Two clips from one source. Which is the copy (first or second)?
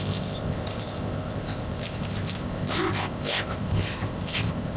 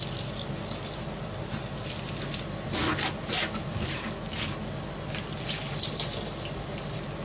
first